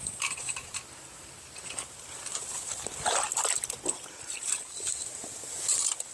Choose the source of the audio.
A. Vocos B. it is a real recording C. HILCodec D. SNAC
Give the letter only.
B